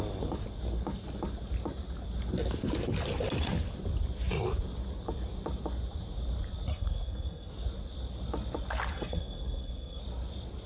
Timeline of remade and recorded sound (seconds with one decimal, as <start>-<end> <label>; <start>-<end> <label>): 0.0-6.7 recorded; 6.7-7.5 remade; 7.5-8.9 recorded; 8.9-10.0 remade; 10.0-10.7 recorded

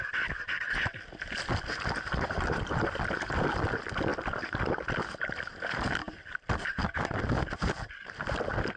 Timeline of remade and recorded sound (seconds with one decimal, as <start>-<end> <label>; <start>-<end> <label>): 0.0-8.8 recorded

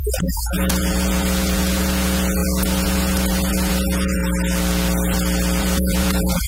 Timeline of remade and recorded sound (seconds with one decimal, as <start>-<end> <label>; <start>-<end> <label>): 0.0-4.2 remade; 4.2-5.6 recorded; 5.6-6.5 remade